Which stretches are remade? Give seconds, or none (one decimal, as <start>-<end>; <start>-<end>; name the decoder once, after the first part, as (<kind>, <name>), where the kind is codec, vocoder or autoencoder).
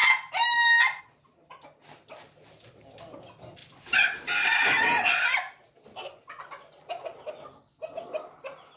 none